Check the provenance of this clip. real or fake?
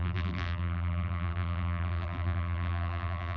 fake